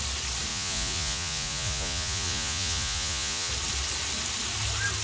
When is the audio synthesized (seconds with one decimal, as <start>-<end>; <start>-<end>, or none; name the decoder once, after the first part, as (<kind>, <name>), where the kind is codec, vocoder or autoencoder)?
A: 0.5-3.5 (vocoder, Vocos)